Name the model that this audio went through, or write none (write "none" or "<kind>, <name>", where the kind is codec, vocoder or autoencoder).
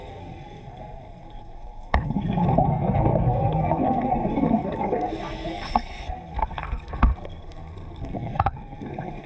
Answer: codec, SNAC